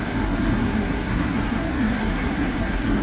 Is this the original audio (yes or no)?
no